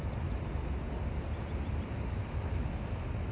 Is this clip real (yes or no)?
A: yes